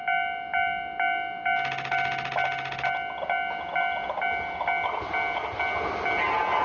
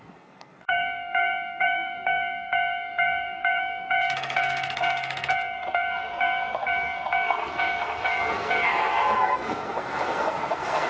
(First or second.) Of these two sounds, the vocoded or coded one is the second